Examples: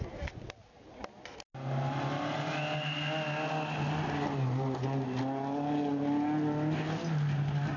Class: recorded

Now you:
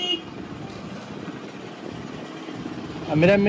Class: recorded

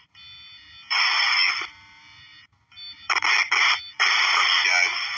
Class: recorded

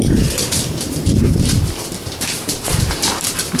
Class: remade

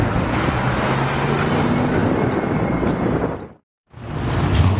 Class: recorded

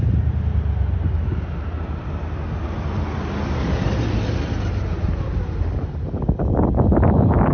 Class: recorded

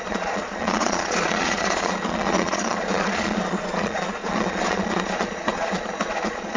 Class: remade